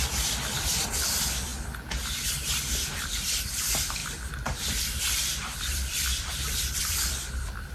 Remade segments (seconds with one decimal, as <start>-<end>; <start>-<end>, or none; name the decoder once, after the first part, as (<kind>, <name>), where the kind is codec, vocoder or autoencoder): 0.0-1.5 (vocoder, BigVGAN v2); 2.9-7.7